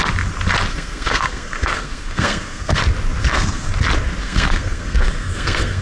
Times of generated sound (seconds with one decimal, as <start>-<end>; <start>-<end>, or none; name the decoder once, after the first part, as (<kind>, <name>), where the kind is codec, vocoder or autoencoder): 0.7-2.8 (codec, SNAC); 3.2-3.7; 4.2-5.8